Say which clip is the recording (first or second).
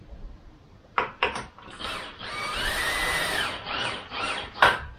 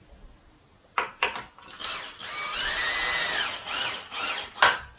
second